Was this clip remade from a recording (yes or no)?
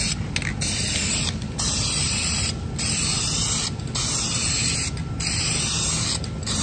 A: no